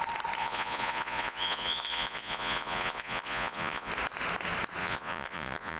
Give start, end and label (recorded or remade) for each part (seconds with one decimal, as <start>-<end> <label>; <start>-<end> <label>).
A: 0.0-0.4 recorded; 0.4-3.9 remade; 3.9-4.8 recorded; 4.8-5.8 remade